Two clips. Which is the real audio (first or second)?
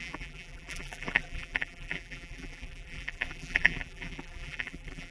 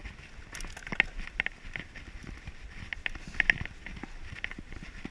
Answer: second